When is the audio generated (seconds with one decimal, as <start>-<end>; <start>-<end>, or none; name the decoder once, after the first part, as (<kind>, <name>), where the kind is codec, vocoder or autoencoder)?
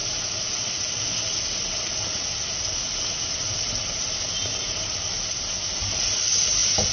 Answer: none